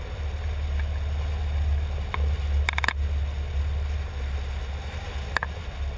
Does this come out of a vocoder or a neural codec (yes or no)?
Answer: no